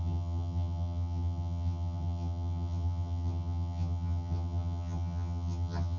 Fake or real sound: fake